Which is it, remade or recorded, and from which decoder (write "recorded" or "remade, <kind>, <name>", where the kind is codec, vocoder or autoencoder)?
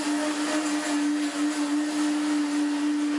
recorded